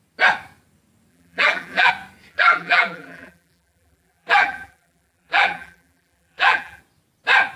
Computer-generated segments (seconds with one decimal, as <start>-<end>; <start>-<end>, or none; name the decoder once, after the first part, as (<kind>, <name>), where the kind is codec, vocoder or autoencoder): 1.1-1.9 (vocoder, BigVGAN v2); 2.3-6.8